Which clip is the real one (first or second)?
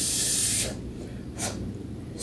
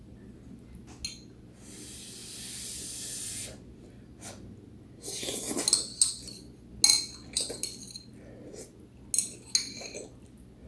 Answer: second